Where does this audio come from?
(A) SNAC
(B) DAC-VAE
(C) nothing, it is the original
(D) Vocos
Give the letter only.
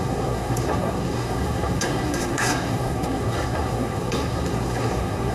A